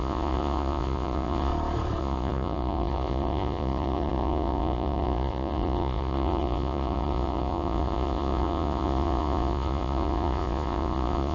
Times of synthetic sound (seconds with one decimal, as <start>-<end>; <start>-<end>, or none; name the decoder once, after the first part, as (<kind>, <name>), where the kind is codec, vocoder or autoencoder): 0.0-1.5 (vocoder, Vocos); 2.0-11.3